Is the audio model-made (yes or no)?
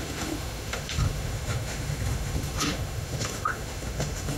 yes